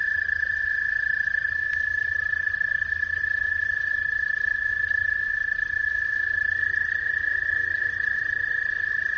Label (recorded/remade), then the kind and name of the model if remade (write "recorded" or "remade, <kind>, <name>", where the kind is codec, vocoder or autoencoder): recorded